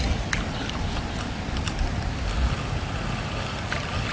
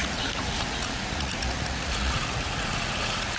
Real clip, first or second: first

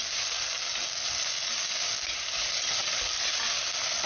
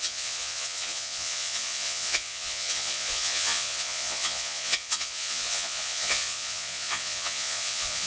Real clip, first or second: first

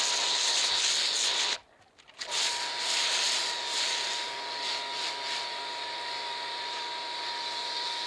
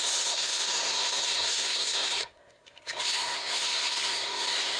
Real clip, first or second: first